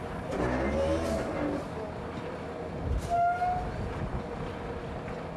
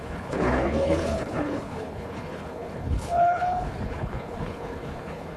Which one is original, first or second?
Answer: first